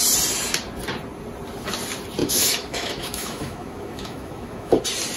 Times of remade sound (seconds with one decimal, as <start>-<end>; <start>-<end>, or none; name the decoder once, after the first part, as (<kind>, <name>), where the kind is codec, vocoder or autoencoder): 2.2-4.8 (autoencoder, DAC-VAE)